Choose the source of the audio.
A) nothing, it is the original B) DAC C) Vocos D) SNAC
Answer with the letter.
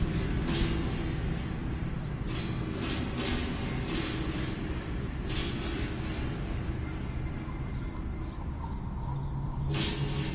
A